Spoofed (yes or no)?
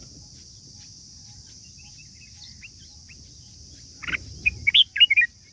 no